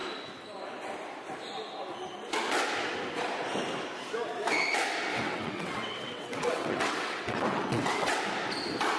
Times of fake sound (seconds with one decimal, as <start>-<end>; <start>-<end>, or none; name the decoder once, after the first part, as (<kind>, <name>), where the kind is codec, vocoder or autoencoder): 5.1-8.2 (vocoder, WaveNeXt)